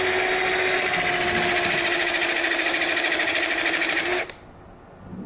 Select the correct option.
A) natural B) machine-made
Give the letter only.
A